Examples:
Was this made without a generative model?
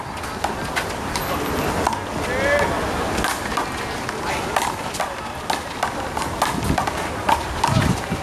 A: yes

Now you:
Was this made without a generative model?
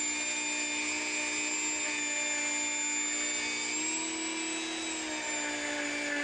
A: yes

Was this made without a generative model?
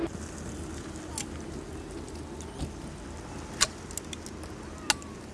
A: yes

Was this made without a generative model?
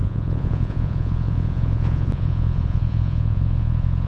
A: no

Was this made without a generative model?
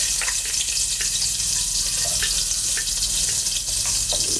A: yes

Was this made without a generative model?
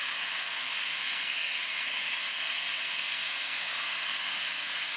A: no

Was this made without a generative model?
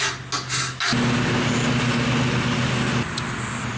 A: yes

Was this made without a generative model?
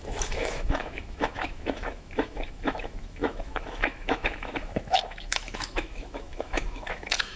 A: no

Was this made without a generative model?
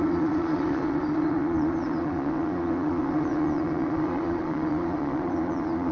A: no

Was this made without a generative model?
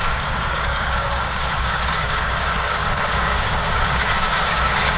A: no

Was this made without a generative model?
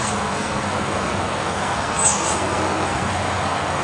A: no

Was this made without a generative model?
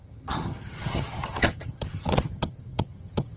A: no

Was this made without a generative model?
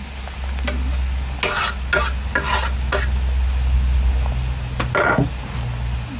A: yes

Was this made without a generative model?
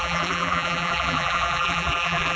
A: no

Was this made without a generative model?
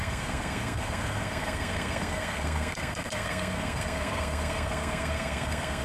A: no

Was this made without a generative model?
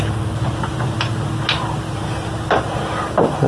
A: yes